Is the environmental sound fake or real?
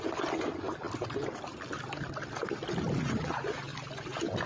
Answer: real